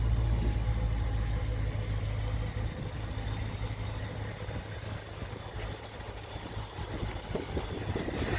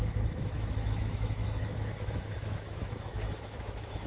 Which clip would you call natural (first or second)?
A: first